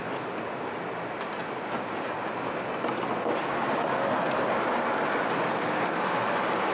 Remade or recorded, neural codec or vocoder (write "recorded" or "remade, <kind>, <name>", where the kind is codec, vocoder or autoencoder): recorded